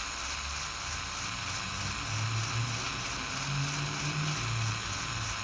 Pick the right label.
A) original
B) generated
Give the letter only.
A